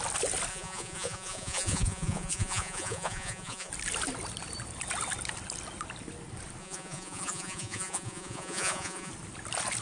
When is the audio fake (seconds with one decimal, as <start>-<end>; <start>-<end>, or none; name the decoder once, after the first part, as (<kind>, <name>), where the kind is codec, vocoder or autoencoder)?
0.5-3.7 (vocoder, Vocos); 6.6-9.1